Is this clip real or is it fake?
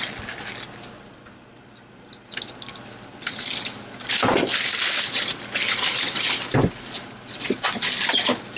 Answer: real